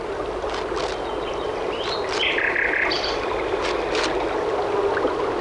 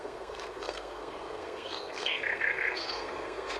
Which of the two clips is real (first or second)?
first